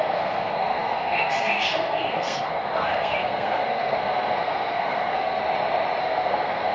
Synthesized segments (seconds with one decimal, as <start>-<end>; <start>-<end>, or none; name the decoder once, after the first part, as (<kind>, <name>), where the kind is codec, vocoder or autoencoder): 0.0-5.4 (codec, SNAC); 6.0-6.7